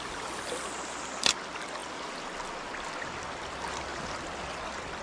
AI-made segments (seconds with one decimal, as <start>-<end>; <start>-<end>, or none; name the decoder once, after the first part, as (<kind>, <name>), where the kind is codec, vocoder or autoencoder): none